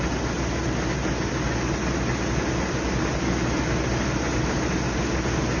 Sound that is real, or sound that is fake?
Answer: real